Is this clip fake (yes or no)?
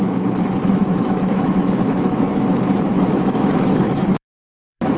yes